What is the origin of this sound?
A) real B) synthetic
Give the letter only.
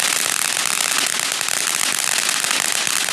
A